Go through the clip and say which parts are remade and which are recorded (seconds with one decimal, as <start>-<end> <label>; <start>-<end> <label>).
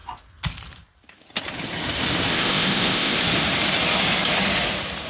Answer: 0.0-2.3 recorded; 2.3-3.2 remade; 3.2-5.1 recorded